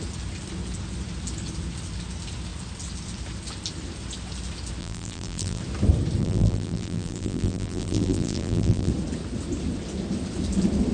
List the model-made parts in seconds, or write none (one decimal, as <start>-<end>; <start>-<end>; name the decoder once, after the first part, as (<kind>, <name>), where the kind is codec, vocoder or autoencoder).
4.8-5.6 (vocoder, BigVGAN v2); 6.2-8.9